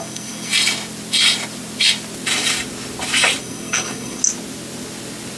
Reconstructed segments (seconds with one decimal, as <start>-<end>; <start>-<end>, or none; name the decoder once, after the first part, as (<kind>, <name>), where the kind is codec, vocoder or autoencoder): 0.0-0.5 (codec, SNAC); 3.4-4.2